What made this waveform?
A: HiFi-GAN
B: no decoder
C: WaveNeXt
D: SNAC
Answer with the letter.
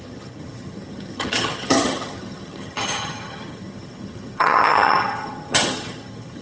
A